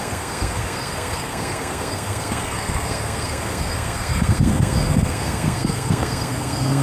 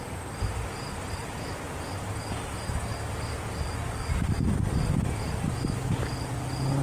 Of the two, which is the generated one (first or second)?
first